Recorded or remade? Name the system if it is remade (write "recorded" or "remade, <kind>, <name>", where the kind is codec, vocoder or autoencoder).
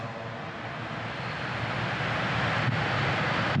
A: recorded